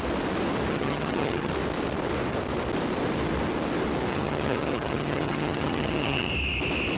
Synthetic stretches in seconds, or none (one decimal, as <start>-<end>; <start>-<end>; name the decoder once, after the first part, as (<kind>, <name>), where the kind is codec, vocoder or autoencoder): 0.7-1.5 (vocoder, HiFi-GAN); 4.1-6.3